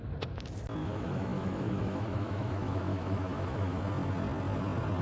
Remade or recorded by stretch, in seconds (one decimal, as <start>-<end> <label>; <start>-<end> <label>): 0.0-0.8 recorded; 0.8-3.8 remade; 3.8-5.0 recorded